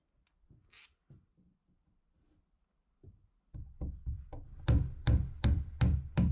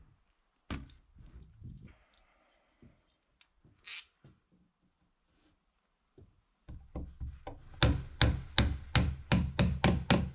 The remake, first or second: first